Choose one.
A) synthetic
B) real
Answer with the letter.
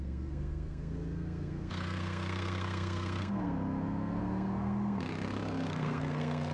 A